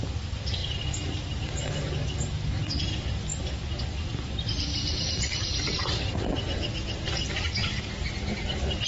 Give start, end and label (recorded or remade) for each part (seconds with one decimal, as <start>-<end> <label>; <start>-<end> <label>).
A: 0.0-8.9 recorded